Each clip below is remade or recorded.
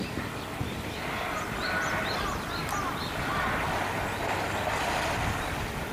recorded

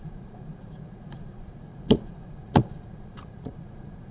remade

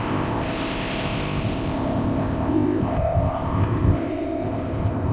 remade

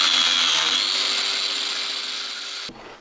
recorded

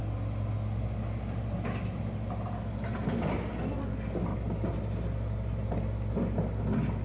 recorded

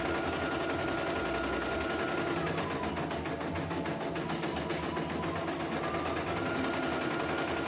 recorded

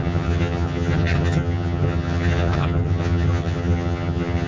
remade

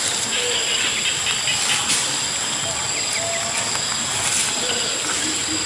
recorded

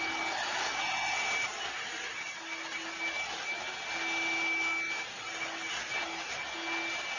recorded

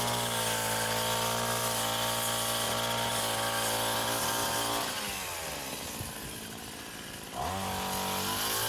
recorded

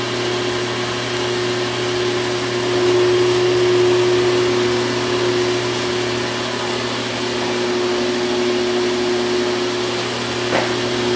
recorded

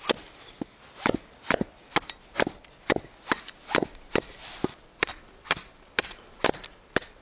recorded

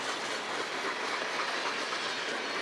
recorded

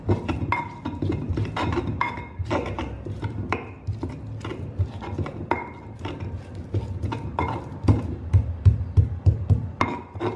recorded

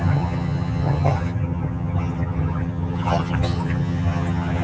remade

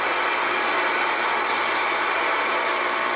recorded